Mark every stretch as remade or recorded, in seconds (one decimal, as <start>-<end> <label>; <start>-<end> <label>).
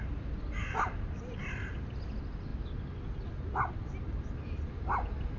0.0-0.6 recorded; 0.6-1.2 remade; 1.2-5.4 recorded